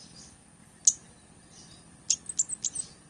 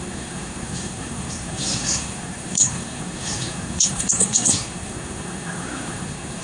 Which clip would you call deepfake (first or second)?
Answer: second